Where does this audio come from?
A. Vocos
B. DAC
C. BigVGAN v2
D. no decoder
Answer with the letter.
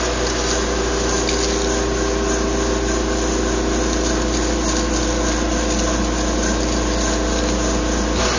D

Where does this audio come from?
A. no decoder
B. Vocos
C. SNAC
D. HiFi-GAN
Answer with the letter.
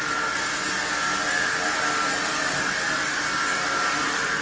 A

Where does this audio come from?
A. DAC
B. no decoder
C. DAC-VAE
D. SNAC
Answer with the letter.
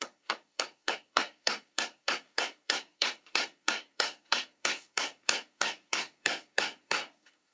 D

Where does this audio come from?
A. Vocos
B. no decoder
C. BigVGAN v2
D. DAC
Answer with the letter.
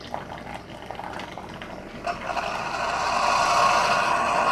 B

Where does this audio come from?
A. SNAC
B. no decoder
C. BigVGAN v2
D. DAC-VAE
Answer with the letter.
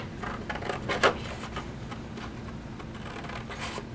B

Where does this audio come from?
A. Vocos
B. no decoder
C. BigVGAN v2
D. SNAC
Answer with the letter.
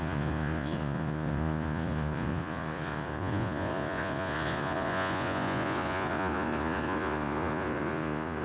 A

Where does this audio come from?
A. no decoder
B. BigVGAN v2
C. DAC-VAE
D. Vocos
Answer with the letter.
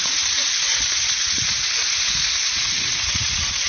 D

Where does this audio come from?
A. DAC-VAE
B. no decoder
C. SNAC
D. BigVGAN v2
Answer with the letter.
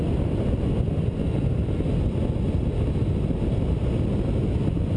B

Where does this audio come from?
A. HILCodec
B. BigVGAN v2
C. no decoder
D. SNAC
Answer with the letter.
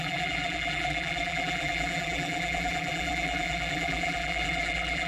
B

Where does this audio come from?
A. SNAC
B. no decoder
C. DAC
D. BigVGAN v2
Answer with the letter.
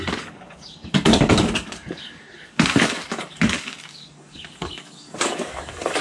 C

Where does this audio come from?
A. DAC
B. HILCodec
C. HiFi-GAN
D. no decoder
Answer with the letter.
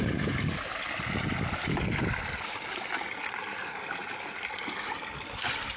D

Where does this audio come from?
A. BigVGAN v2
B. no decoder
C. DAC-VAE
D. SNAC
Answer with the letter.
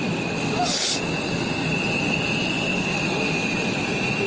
B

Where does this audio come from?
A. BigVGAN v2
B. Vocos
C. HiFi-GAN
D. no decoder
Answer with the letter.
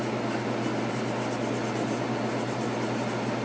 D